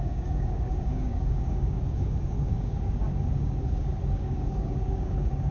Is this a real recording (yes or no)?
no